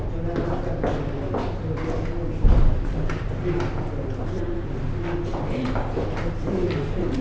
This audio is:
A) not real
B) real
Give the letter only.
B